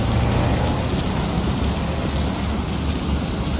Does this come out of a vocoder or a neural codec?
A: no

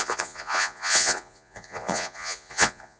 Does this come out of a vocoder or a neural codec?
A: yes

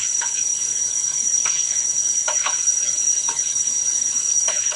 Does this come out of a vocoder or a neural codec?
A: yes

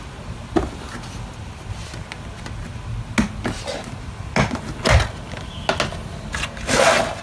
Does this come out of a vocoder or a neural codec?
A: no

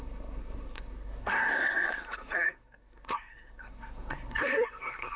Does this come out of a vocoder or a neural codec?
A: yes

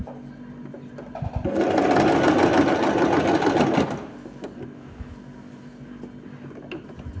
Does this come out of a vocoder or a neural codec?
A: no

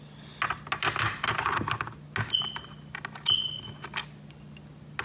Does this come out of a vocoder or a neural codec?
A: no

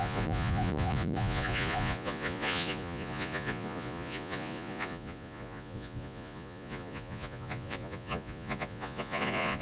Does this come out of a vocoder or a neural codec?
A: yes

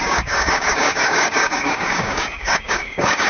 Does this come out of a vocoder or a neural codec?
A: yes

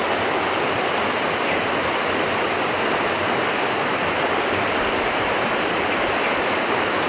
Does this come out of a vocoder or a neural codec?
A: no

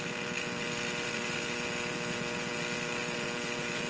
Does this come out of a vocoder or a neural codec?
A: no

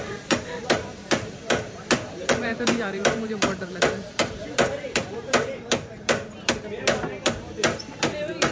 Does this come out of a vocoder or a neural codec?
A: yes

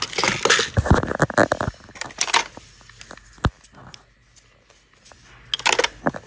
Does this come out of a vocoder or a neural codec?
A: no